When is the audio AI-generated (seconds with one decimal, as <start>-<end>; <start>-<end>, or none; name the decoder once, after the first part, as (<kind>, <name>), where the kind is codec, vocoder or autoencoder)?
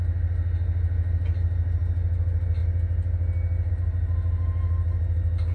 none